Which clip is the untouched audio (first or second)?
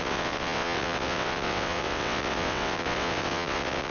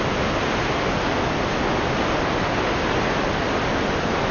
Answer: second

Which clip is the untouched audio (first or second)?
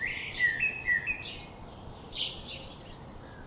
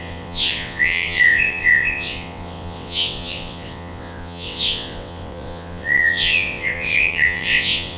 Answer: first